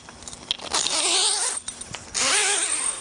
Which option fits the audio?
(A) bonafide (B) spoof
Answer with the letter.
A